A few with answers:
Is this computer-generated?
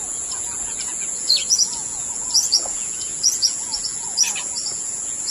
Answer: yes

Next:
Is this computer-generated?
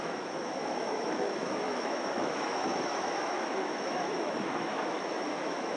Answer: yes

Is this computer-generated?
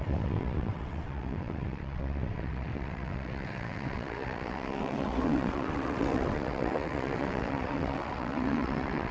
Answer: yes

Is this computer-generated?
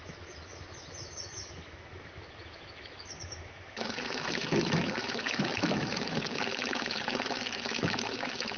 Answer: yes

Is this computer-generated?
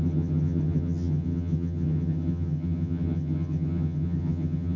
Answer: yes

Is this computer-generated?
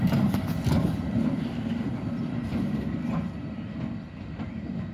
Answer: yes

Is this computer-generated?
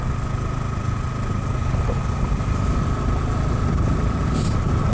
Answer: no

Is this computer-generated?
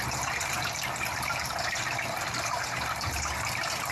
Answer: yes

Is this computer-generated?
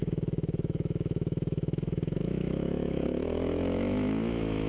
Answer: yes